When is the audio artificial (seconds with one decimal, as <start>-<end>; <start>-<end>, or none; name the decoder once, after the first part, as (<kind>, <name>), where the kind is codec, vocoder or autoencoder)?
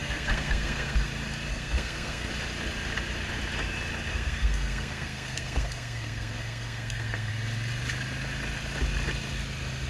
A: 0.0-1.1 (codec, SNAC); 1.5-2.3; 4.1-7.3